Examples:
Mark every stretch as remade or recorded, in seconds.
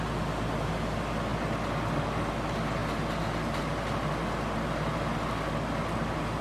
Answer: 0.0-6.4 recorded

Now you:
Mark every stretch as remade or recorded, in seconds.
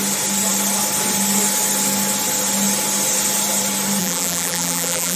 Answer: 0.0-4.0 recorded; 4.0-5.2 remade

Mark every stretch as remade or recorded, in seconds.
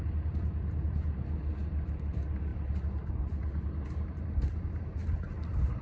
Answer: 0.0-5.8 recorded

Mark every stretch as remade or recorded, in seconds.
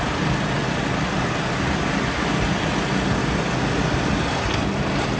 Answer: 0.0-5.2 recorded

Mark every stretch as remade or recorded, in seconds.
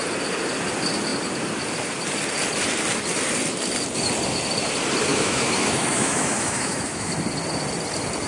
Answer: 0.0-5.1 recorded; 5.1-7.1 remade; 7.1-8.3 recorded